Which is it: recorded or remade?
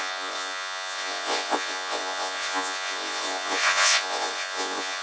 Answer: remade